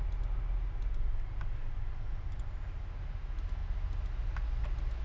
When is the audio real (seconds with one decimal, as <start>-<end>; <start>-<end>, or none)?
0.0-5.0